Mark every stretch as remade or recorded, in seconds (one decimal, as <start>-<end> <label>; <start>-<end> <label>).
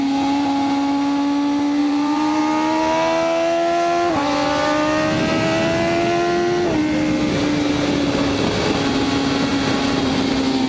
0.0-1.8 recorded; 1.8-2.4 remade; 2.4-9.5 recorded; 9.5-10.0 remade; 10.0-10.7 recorded